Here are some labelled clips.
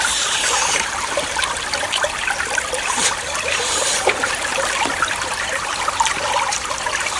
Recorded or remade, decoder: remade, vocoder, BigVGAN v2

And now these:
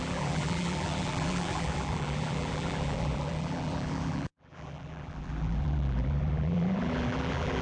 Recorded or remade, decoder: remade, vocoder, BigVGAN v2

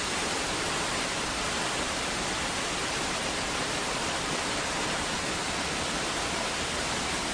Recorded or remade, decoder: remade, vocoder, BigVGAN v2